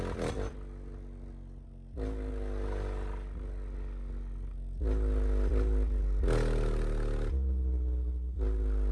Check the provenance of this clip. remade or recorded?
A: recorded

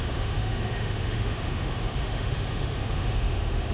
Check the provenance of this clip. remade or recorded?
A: remade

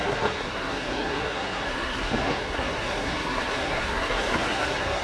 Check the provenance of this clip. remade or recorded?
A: remade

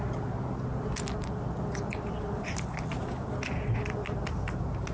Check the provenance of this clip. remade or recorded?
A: recorded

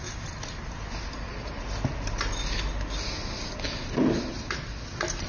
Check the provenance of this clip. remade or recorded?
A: recorded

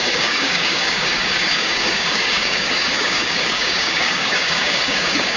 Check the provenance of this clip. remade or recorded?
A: remade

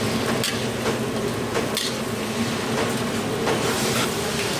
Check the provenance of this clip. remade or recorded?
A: recorded